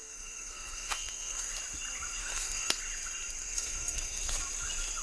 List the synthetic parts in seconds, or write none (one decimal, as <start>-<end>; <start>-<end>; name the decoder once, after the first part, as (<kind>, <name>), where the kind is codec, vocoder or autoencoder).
0.0-1.5 (codec, SNAC); 2.2-2.8; 3.4-4.2